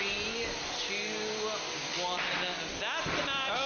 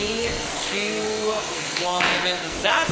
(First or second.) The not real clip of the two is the second